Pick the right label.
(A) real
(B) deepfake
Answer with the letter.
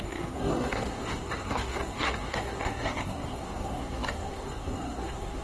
B